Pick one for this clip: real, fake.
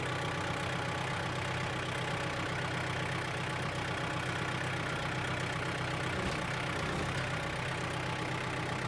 real